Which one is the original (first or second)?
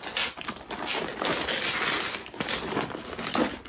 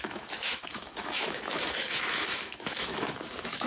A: first